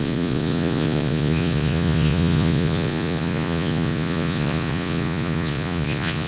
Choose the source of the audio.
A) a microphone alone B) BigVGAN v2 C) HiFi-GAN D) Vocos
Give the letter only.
D